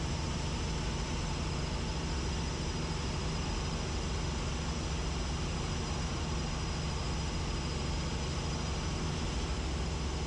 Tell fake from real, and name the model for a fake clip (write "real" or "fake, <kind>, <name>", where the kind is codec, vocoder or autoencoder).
real